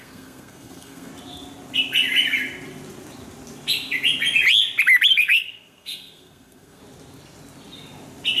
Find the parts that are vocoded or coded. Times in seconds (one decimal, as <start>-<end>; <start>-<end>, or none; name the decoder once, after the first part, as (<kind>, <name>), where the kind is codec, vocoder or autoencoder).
0.0-1.1 (codec, SNAC); 5.1-6.8